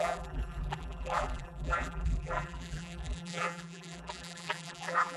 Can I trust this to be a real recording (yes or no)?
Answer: no